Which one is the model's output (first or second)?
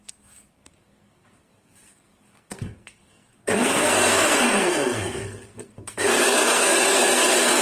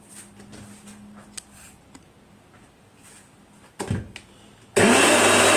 first